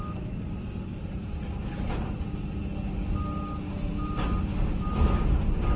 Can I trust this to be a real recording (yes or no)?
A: yes